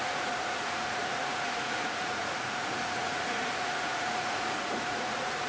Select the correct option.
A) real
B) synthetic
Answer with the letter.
B